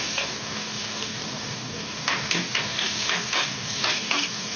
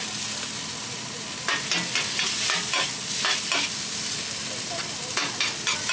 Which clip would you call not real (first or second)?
first